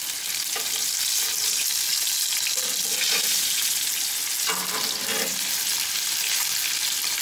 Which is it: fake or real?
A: real